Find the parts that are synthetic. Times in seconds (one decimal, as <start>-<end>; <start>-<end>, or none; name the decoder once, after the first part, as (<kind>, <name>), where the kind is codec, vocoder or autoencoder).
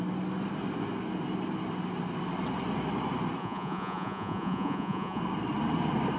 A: 3.4-5.2 (vocoder, Vocos)